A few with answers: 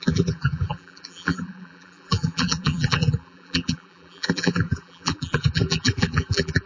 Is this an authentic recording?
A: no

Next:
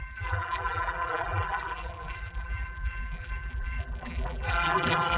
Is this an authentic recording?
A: no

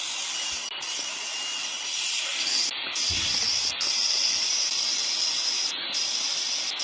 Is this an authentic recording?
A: no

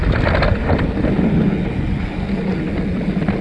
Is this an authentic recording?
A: yes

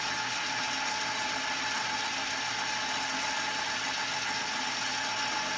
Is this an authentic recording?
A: yes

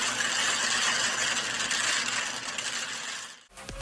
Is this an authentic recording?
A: yes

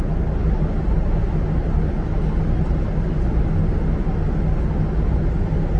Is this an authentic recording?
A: yes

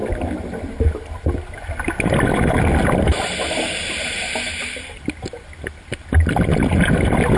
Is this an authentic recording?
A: yes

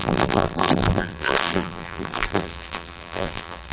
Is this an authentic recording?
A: no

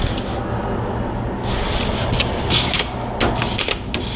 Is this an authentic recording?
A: yes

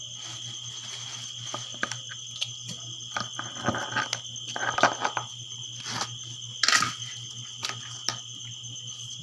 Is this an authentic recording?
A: no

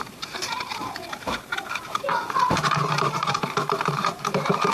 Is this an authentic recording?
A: no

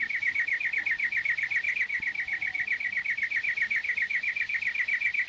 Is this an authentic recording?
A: no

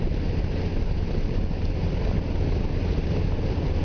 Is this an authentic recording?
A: yes